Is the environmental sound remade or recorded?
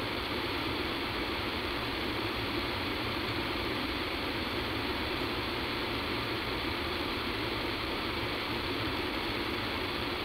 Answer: remade